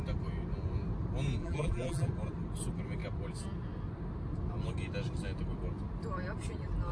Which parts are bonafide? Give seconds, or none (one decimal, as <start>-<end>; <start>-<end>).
0.0-1.4; 2.1-6.9